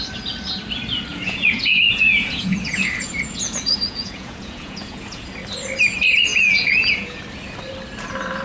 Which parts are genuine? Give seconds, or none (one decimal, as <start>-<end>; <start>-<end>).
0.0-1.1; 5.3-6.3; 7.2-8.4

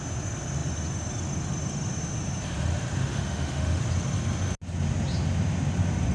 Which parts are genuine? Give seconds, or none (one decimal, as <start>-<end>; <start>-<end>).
0.0-3.0; 3.8-6.1

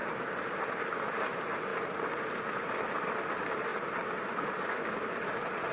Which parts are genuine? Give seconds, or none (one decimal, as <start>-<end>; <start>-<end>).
0.6-1.7; 2.4-5.7

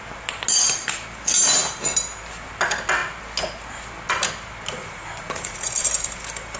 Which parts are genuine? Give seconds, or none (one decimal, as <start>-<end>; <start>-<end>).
0.0-4.8; 5.7-6.6

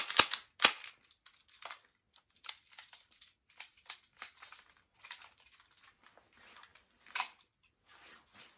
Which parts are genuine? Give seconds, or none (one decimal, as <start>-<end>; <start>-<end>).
0.0-8.6

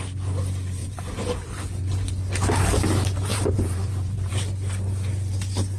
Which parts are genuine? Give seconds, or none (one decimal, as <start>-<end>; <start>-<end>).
0.0-0.8; 2.2-3.3; 4.3-5.8

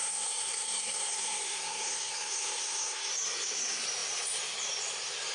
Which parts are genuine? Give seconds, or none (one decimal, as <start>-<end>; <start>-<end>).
3.1-5.3